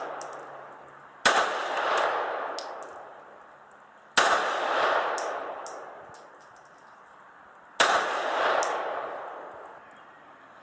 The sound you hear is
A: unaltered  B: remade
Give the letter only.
A